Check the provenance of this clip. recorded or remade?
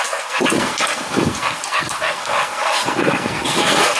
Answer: remade